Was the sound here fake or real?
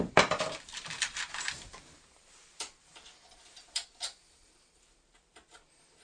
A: fake